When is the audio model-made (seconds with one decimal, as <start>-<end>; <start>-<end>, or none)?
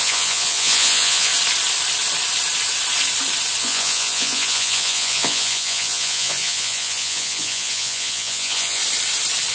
0.0-1.3; 3.6-8.8